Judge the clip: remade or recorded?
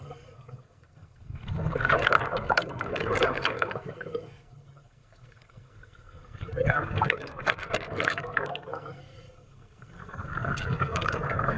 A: remade